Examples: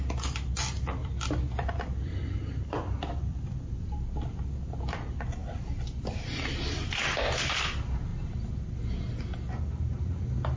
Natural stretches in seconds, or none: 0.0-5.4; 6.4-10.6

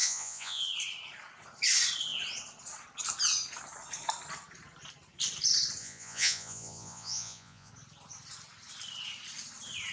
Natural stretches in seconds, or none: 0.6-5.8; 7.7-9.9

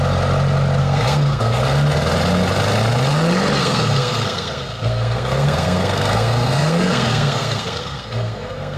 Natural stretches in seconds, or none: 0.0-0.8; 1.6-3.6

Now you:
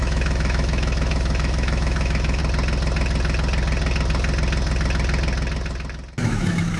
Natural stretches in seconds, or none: 2.4-6.2